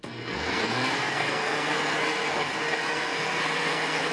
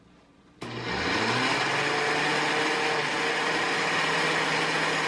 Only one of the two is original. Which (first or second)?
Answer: second